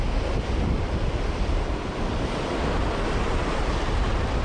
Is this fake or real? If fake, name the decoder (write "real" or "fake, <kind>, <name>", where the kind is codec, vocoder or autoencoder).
real